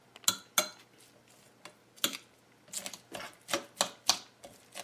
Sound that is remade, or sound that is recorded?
recorded